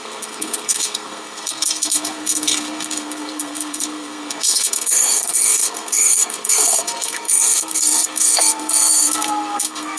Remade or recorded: remade